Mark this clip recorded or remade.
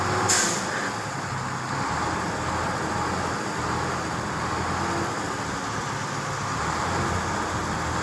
recorded